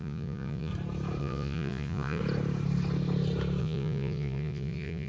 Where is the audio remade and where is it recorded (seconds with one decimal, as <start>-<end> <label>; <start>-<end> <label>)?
0.0-0.7 remade; 0.7-1.2 recorded; 1.2-2.2 remade; 2.2-3.6 recorded; 3.6-5.1 remade